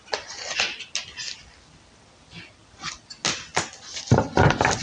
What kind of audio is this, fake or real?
real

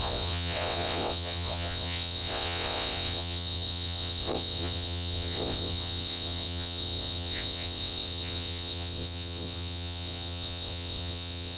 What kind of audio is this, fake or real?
fake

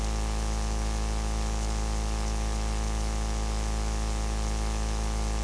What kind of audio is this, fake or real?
fake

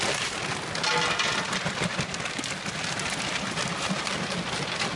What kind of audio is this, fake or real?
real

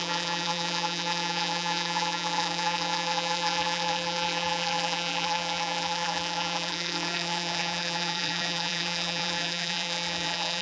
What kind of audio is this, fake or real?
fake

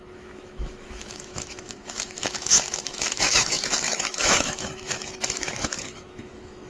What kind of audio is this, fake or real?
fake